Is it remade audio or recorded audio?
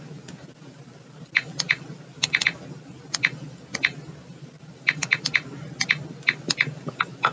recorded